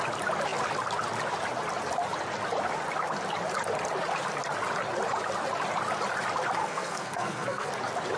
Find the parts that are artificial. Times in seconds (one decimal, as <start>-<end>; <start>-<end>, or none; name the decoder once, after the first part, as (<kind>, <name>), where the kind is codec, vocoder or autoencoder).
6.6-7.7 (codec, SNAC)